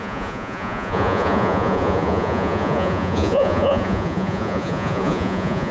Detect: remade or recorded remade